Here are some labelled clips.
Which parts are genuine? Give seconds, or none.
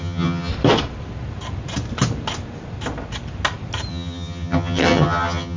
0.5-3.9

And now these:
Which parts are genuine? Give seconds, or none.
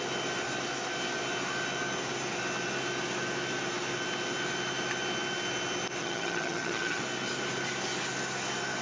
0.0-6.0; 7.0-8.8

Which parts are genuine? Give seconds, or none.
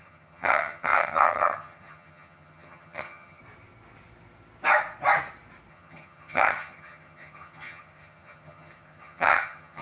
3.4-5.7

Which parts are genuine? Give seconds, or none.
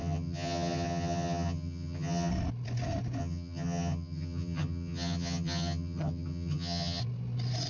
2.3-3.2; 7.0-7.7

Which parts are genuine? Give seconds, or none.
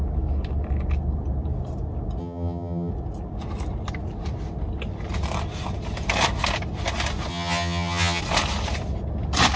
0.0-2.2; 2.9-7.3; 8.2-9.6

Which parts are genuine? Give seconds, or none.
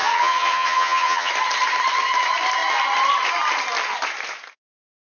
1.3-5.0